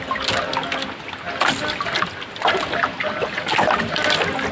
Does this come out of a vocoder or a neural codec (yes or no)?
no